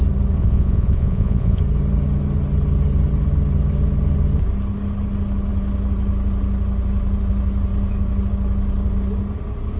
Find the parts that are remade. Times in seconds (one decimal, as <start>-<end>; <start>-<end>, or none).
0.4-1.6